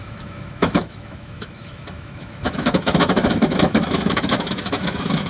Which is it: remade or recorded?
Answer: remade